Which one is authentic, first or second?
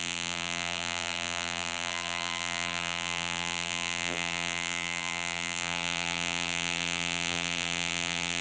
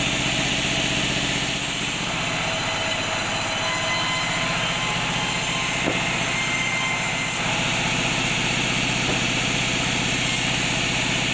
second